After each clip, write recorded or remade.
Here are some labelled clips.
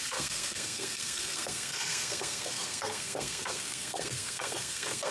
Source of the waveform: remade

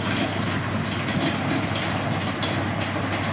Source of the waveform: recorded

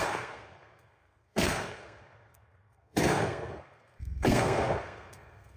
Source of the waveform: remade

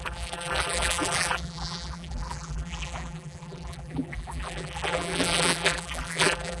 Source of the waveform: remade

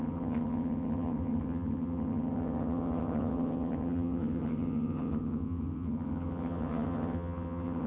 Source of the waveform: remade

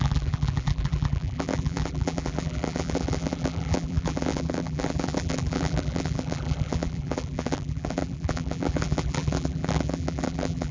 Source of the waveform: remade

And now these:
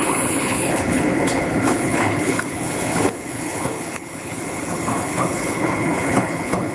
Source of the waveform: remade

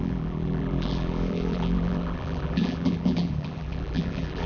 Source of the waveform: remade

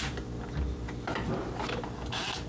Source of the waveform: recorded